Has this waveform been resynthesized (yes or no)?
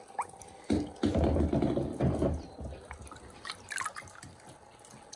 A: no